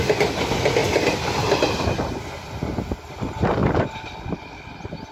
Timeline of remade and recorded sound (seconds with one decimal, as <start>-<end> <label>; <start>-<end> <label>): 0.0-5.1 recorded